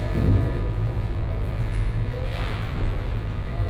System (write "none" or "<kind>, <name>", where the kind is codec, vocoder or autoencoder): vocoder, BigVGAN v2